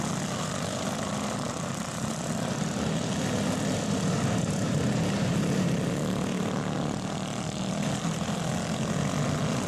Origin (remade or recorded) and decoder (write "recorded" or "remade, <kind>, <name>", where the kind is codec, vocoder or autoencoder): recorded